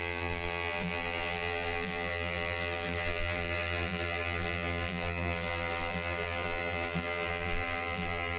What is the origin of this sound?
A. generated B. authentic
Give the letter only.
A